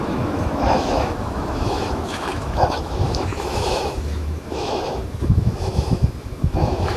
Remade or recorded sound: remade